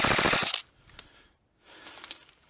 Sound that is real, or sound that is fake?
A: real